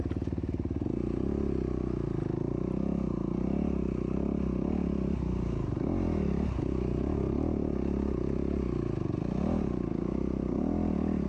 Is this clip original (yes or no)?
yes